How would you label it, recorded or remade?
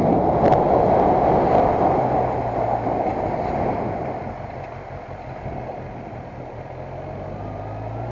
recorded